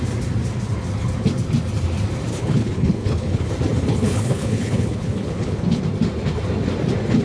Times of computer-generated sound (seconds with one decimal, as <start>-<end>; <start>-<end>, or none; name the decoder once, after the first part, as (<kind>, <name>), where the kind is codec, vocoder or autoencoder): 2.3-3.5 (codec, HILCodec); 3.9-5.8